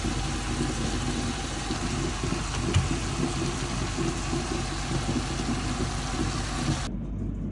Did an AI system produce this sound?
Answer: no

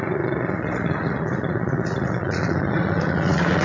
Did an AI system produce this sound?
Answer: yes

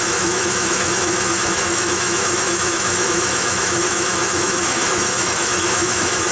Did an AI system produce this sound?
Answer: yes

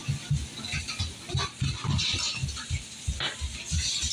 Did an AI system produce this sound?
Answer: no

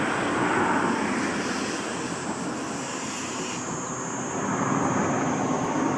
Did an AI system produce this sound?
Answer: no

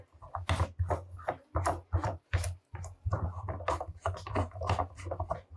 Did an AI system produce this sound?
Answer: no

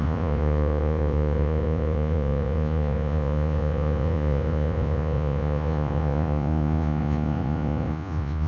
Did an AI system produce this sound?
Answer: yes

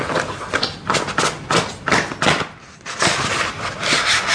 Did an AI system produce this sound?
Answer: no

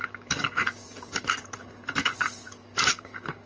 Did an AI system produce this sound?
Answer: yes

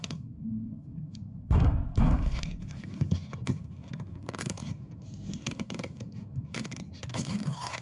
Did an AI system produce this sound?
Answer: yes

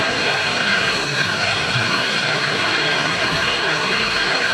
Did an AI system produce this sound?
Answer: yes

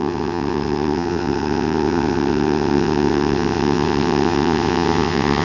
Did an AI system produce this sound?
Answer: yes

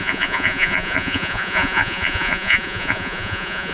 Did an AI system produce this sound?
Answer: yes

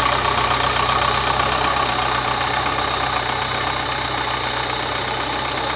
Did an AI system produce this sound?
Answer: no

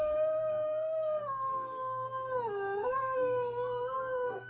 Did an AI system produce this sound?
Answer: yes